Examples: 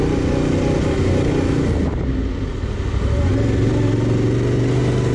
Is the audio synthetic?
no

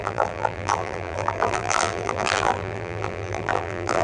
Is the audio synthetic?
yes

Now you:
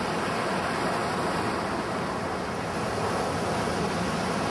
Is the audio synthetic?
no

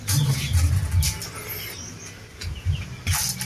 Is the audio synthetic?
no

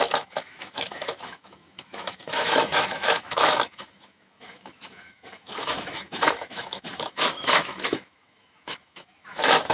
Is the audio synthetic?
yes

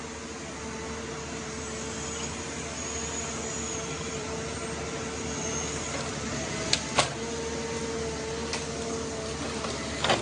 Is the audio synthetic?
no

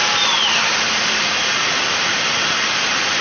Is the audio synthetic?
yes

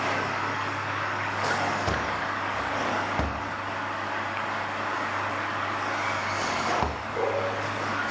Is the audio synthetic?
yes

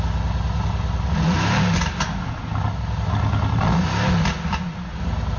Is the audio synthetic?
no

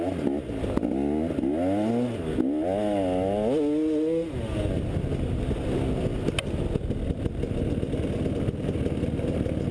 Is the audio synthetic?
no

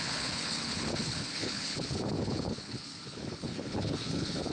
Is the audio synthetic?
yes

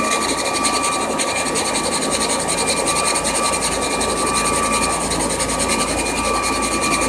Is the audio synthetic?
no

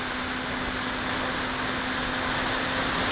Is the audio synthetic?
no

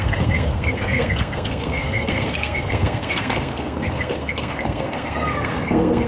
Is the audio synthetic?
yes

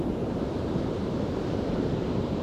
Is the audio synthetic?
yes